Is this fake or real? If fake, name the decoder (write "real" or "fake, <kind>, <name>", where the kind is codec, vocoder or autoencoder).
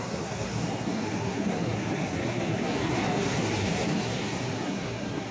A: fake, codec, SNAC